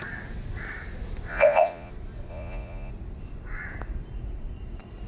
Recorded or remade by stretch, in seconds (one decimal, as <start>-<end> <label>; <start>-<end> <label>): 0.0-1.3 recorded; 1.3-1.9 remade; 1.9-2.3 recorded; 2.3-2.9 remade; 2.9-5.1 recorded